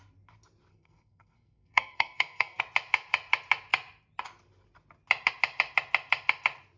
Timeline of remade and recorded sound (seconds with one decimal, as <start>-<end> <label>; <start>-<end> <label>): 0.0-0.7 recorded; 0.7-2.6 remade; 2.6-6.8 recorded